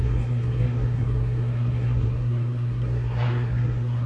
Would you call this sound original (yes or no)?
no